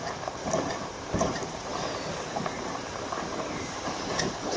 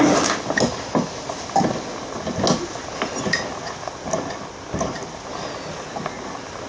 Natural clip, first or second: second